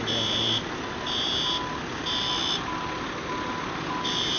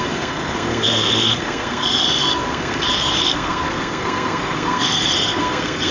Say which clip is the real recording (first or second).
first